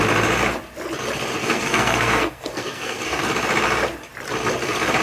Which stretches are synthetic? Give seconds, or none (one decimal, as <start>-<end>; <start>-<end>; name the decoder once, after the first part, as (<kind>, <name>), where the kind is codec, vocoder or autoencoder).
1.4-3.2 (codec, SNAC)